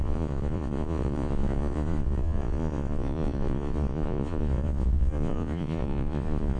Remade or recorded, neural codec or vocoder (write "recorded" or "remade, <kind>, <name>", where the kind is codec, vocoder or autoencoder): remade, vocoder, Vocos